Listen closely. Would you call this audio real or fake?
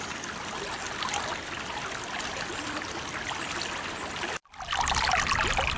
real